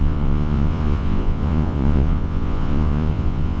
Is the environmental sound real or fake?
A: fake